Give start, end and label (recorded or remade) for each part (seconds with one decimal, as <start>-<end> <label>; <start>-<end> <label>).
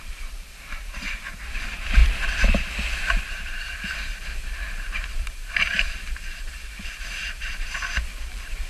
0.0-8.7 remade